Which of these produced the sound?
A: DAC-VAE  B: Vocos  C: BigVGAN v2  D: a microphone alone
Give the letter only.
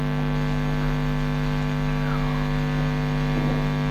D